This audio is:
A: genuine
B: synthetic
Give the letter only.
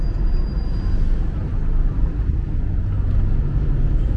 A